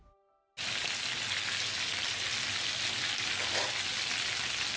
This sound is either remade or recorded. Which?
recorded